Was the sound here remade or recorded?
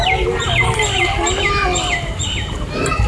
recorded